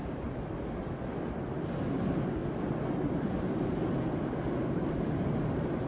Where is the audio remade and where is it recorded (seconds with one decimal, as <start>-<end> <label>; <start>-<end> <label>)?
0.0-5.9 recorded